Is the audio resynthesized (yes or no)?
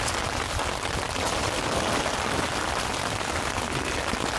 no